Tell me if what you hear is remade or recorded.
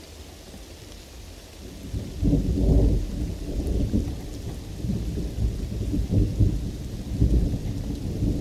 recorded